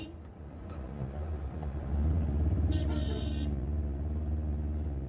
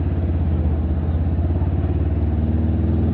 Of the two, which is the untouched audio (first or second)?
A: second